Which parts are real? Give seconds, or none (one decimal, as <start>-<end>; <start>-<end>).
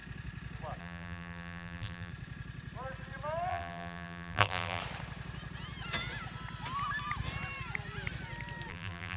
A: 0.0-0.8; 2.1-3.5; 4.8-8.7